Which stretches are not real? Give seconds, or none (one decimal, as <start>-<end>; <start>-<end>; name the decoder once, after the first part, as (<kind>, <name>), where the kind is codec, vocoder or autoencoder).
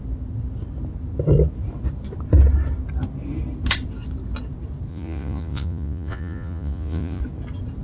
4.9-7.2 (vocoder, Vocos)